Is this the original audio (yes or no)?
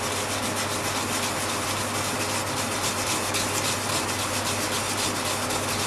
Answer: yes